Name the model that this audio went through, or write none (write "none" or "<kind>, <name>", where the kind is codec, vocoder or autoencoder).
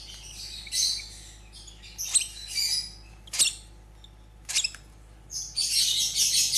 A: none